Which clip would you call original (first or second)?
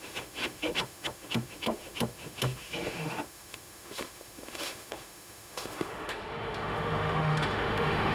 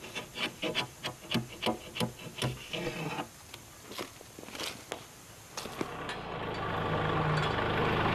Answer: second